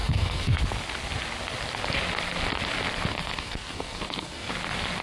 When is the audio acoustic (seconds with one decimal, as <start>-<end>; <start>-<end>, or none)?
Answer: 0.6-3.1; 4.5-5.0